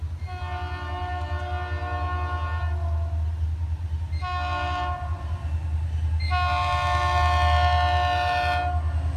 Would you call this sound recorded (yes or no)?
yes